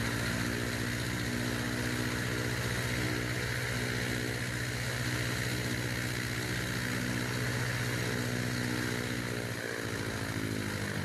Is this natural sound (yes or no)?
yes